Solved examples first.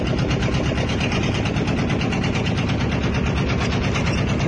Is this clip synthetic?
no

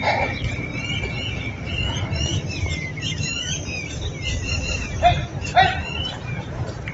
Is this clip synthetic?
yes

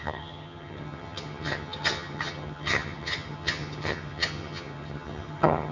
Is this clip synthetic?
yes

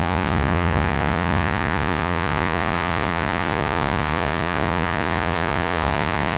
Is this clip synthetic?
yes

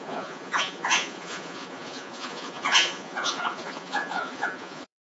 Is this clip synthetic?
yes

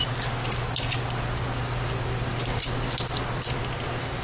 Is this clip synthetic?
no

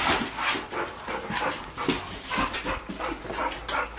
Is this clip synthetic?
no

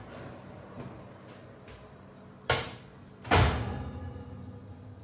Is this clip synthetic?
no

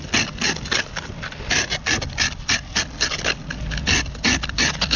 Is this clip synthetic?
no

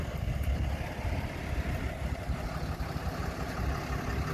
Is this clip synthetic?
no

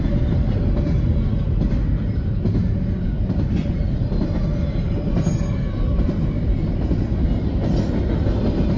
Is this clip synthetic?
no